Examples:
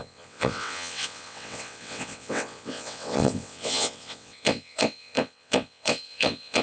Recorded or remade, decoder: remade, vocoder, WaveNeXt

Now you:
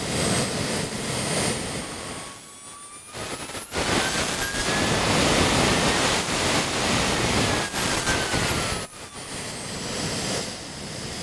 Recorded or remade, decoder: recorded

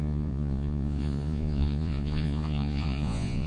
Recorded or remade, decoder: remade, vocoder, Vocos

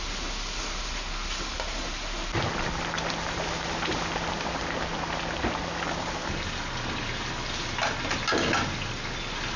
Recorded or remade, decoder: recorded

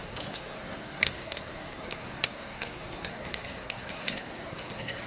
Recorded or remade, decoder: remade, codec, SNAC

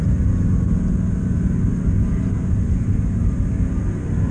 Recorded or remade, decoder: recorded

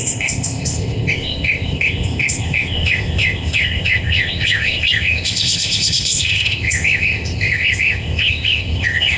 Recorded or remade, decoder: remade, codec, ZipCodec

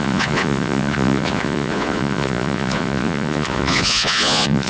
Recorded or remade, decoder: remade, vocoder, Vocos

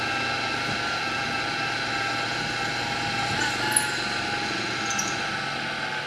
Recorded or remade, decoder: recorded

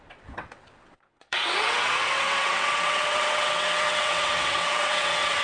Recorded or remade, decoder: remade, vocoder, WaveNeXt